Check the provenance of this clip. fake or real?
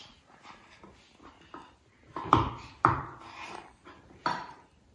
real